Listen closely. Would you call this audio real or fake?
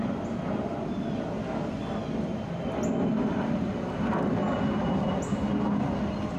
real